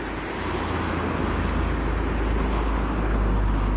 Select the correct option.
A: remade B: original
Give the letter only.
B